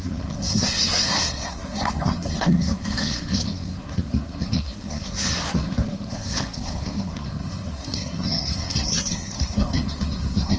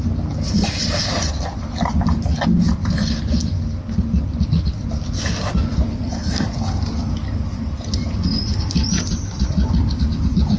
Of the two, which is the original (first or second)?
second